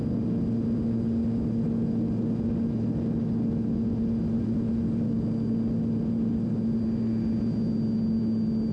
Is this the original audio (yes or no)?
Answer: yes